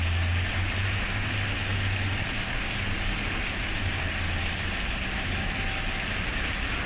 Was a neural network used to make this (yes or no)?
no